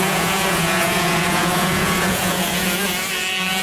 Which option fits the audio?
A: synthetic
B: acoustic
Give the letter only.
A